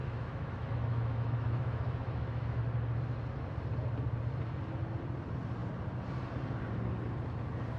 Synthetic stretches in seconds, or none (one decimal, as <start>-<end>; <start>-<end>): 0.0-2.6